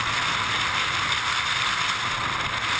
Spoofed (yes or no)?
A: no